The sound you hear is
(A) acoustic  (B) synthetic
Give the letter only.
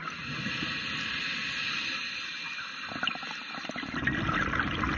A